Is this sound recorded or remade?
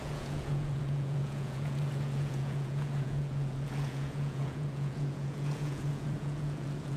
remade